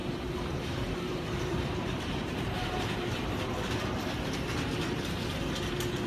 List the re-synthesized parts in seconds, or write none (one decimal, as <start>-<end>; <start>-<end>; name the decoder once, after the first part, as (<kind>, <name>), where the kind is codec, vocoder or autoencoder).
0.0-3.7 (vocoder, BigVGAN v2)

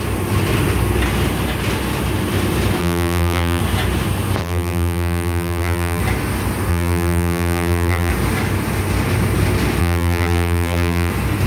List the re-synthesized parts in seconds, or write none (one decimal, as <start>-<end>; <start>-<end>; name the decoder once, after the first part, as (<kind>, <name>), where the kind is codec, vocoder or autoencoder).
2.8-3.6 (vocoder, BigVGAN v2); 4.4-6.0; 6.7-8.1; 9.8-11.1

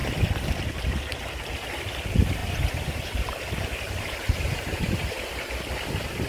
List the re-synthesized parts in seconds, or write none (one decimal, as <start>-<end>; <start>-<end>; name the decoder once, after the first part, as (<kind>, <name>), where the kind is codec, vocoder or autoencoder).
2.4-5.5 (vocoder, BigVGAN v2)

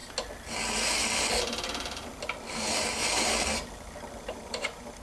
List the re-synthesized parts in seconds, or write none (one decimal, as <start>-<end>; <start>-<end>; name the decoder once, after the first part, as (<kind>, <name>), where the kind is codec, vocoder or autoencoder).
1.4-2.1 (vocoder, BigVGAN v2); 4.2-5.0

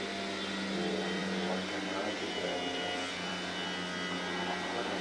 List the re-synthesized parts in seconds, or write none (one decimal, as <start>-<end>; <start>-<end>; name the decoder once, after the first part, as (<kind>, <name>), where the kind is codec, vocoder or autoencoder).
none